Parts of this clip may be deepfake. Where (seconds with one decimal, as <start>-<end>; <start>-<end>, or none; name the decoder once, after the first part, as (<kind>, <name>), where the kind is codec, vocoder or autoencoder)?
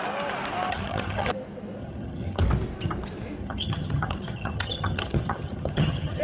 0.7-1.3 (vocoder, HiFi-GAN); 1.8-2.4; 3.4-6.2